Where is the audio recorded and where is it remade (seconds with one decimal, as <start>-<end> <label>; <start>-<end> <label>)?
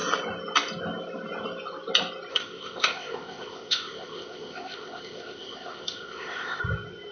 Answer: 0.0-2.3 recorded; 2.3-6.6 remade; 6.6-7.1 recorded